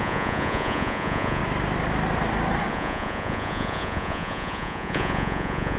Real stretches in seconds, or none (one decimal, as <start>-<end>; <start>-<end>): 1.4-2.7